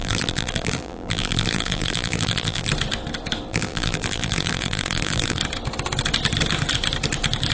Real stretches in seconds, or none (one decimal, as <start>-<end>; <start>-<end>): 2.7-3.5; 5.4-7.5